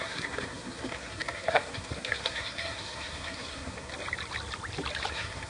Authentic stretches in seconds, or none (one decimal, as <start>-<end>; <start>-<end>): 3.9-5.1